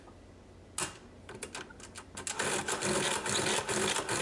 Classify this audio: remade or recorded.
recorded